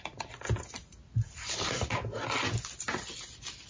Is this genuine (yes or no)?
yes